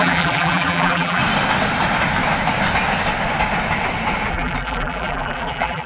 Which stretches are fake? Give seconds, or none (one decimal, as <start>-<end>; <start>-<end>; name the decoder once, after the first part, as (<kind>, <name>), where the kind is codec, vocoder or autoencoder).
0.0-1.2 (vocoder, BigVGAN v2); 4.3-5.9